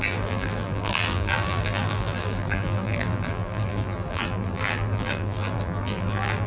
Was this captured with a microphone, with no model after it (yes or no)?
no